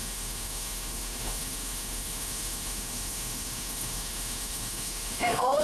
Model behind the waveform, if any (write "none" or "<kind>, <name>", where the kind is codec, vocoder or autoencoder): autoencoder, DAC-VAE